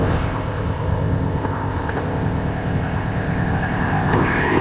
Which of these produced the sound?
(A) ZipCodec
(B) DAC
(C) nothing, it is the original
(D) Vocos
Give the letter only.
A